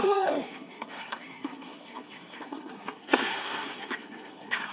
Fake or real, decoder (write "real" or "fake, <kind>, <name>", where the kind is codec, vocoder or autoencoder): fake, codec, SNAC